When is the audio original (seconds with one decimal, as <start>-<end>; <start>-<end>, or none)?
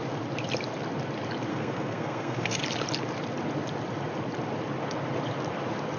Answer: 0.0-1.5; 2.6-6.0